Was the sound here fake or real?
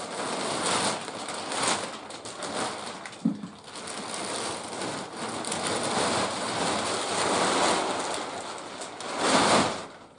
real